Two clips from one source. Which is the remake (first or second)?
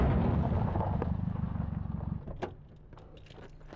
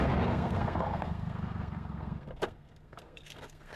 second